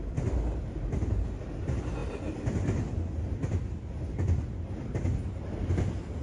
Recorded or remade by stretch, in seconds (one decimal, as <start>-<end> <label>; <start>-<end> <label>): 0.0-6.2 recorded